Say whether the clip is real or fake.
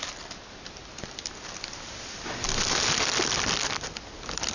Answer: real